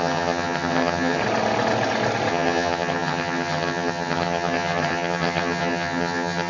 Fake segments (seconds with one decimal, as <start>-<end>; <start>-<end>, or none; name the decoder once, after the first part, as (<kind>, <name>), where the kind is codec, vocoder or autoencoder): 0.0-1.2 (vocoder, HiFi-GAN); 2.3-6.5